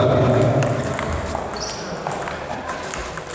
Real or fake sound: real